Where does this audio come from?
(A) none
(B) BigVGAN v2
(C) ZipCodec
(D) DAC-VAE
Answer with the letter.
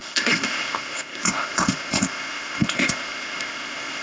C